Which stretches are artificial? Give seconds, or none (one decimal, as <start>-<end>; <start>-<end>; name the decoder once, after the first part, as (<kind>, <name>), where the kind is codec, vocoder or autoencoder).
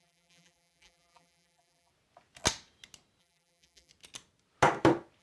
0.0-1.9 (vocoder, BigVGAN v2); 3.2-3.9